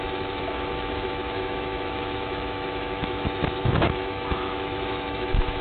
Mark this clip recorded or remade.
remade